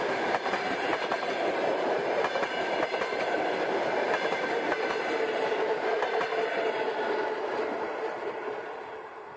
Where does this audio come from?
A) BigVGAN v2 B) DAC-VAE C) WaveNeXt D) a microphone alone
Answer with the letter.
A